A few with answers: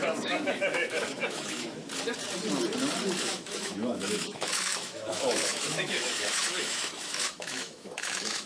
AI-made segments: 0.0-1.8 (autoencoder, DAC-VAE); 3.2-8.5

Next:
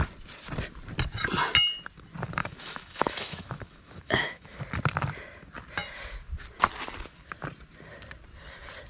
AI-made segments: 2.4-4.6 (autoencoder, DAC-VAE)